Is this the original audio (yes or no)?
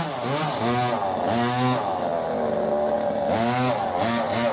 yes